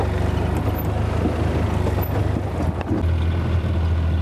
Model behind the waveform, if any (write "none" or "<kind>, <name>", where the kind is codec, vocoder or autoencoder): none